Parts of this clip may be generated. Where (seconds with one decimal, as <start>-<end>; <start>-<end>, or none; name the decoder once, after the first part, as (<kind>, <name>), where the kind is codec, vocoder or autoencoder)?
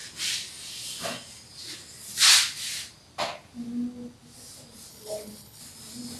4.9-5.6 (codec, HILCodec)